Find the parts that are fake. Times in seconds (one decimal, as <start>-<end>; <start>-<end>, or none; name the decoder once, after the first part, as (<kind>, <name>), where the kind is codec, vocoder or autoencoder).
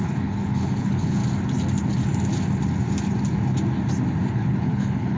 0.0-1.2 (codec, HILCodec); 4.3-5.2